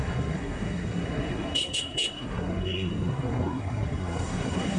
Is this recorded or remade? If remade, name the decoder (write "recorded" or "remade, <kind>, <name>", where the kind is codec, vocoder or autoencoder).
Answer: remade, codec, SNAC